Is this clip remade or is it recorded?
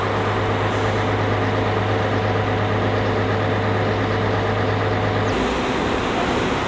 recorded